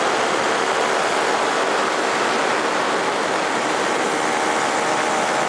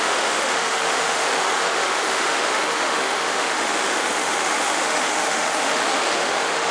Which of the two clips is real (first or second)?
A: first